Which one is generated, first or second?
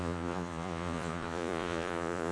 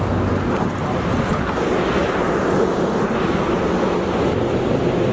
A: first